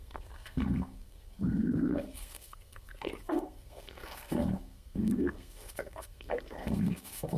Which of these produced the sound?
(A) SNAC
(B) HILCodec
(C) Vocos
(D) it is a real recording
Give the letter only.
A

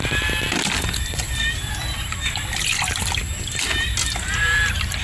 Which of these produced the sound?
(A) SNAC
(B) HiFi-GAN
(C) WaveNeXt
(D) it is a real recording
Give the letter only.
D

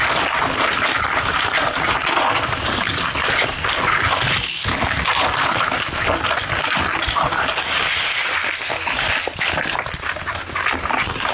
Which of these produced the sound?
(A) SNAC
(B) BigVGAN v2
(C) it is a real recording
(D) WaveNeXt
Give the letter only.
C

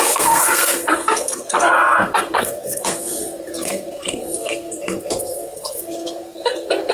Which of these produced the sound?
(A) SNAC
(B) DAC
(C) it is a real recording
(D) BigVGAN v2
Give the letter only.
A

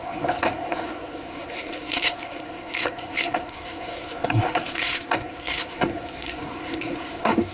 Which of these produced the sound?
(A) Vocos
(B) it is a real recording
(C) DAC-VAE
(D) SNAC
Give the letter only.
D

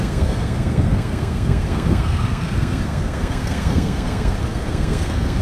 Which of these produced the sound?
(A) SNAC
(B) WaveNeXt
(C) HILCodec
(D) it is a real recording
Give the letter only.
A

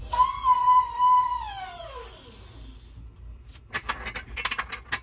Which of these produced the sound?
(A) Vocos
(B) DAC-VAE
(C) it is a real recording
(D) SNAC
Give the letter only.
C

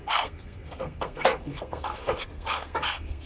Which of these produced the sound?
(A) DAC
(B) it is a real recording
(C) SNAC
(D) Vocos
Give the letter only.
C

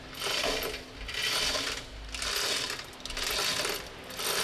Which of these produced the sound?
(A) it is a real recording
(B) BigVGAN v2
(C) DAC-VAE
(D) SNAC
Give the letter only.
A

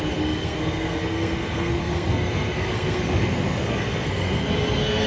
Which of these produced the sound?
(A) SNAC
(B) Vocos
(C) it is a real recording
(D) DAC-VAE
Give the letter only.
A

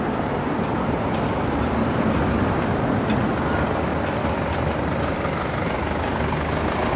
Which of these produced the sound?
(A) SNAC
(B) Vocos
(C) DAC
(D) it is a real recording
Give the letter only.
D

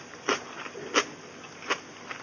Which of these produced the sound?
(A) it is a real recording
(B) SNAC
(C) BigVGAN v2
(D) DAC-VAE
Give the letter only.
A